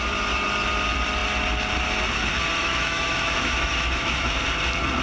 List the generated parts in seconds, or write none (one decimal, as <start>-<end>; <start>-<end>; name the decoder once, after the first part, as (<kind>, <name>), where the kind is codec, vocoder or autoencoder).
2.6-4.4 (autoencoder, DAC-VAE)